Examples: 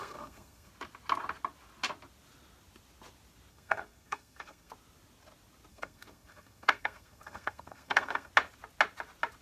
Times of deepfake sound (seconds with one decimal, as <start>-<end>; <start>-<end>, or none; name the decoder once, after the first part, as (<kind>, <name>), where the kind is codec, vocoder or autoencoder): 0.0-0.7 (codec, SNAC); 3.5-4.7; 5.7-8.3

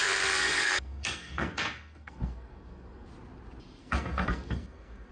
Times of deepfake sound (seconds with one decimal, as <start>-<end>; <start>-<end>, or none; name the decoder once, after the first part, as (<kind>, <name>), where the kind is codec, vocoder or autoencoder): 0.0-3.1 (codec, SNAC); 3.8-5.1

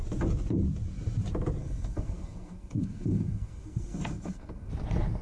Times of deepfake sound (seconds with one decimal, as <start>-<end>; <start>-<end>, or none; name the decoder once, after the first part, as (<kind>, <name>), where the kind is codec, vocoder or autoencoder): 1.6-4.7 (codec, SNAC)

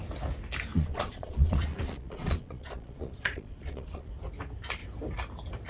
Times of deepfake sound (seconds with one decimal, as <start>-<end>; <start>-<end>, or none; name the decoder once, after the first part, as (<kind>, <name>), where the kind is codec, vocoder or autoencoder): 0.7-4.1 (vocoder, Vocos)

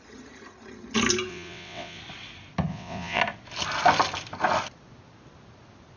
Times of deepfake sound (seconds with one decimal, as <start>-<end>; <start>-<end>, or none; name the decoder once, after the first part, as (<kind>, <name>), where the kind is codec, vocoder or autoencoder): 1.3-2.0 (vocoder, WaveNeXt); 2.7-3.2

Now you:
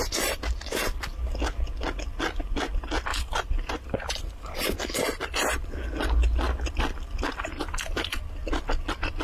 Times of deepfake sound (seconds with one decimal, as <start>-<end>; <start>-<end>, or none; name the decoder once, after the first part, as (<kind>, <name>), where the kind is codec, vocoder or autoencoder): 3.1-4.2 (vocoder, BigVGAN v2)

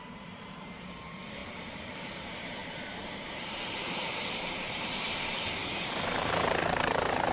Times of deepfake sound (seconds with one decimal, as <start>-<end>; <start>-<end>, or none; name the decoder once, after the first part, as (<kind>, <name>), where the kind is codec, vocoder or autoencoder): 0.0-7.3 (vocoder, BigVGAN v2)

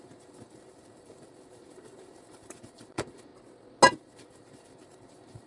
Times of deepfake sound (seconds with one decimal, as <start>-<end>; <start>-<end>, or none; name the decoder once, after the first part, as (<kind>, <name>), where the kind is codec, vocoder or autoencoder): 0.0-3.3 (vocoder, BigVGAN v2); 4.0-5.5